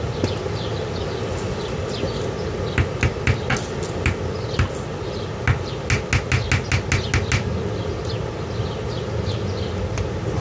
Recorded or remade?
recorded